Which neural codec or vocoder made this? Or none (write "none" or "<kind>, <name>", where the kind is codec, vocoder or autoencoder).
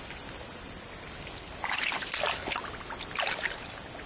none